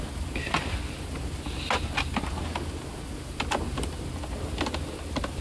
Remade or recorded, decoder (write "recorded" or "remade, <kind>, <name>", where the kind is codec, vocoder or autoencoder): recorded